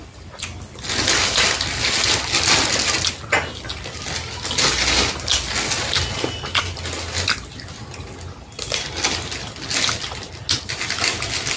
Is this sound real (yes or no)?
yes